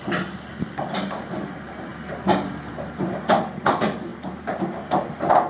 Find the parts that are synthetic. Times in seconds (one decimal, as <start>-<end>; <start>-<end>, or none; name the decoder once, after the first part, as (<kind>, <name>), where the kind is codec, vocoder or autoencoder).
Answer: none